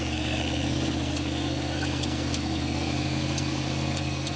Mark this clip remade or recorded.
remade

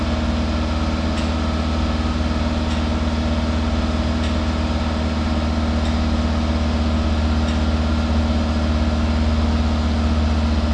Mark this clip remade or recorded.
recorded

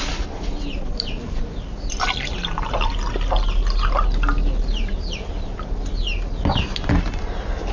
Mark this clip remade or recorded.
recorded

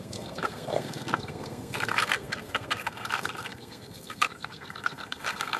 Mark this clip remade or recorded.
remade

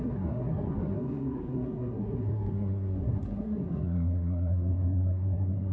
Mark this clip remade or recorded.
remade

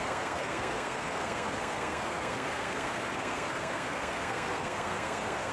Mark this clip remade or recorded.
remade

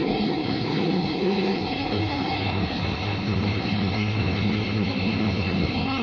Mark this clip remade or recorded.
remade